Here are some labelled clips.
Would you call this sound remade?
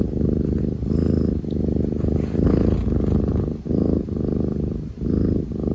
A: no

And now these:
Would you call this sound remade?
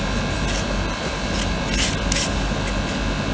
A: no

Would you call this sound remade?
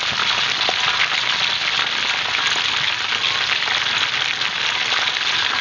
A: no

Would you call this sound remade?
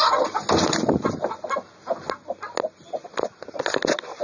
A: no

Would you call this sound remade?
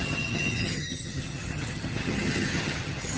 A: yes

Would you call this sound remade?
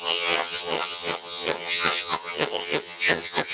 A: yes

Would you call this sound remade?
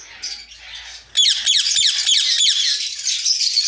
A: no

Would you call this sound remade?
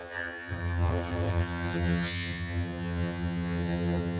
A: yes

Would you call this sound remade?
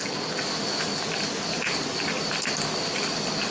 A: no